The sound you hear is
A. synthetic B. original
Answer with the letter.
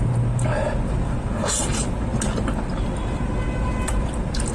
B